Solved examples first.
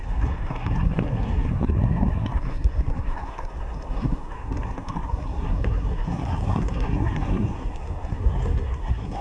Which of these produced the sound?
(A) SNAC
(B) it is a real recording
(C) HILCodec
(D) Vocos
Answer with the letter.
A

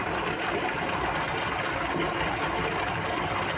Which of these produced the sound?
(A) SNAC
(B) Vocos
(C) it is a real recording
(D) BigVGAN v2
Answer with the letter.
C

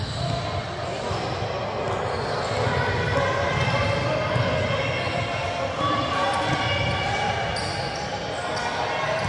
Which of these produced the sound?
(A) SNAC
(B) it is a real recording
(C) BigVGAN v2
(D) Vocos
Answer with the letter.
B